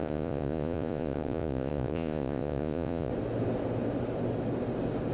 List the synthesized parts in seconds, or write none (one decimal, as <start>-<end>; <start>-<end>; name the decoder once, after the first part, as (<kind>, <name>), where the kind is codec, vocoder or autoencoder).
0.0-3.1 (vocoder, Vocos)